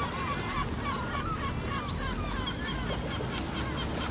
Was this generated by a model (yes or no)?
no